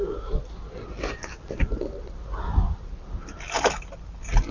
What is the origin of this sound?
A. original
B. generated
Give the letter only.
A